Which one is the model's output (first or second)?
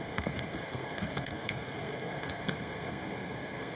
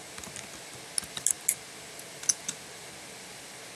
first